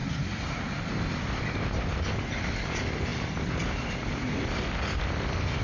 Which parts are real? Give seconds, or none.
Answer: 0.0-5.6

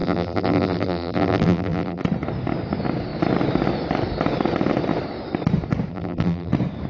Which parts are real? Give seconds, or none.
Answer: 2.0-5.9; 6.5-6.9